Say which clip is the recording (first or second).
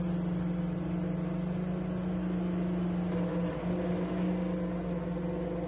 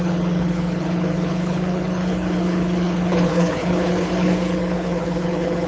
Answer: first